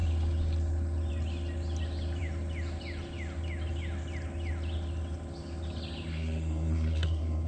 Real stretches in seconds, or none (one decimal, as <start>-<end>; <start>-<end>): 0.0-6.1

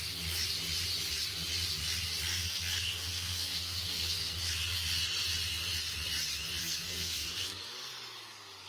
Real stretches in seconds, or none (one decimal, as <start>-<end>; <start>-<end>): 0.0-2.4; 4.5-6.6; 7.9-8.7

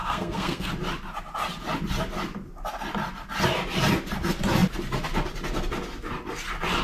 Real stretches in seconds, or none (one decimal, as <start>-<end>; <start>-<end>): 0.7-6.8

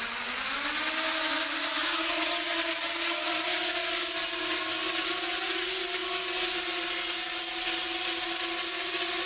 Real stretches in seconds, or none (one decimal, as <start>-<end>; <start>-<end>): 0.0-9.3